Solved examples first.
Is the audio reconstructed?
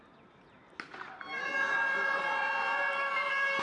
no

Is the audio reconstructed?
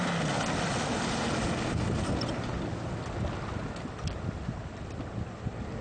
no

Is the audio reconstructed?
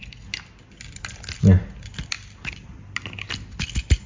no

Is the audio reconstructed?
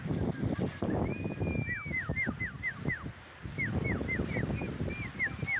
no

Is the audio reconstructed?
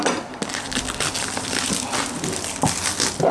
no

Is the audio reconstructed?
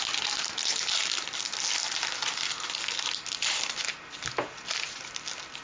no